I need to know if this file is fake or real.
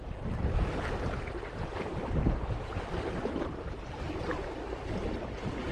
real